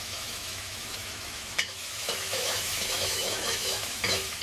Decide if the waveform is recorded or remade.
remade